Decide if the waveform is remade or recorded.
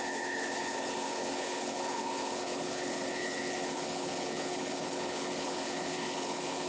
remade